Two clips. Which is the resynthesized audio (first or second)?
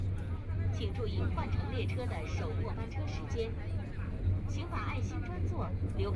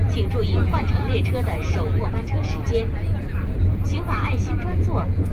second